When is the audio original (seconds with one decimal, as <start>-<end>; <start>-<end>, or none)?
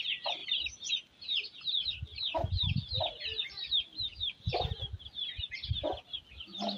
0.0-3.9; 4.7-6.8